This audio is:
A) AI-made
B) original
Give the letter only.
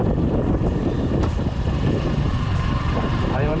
A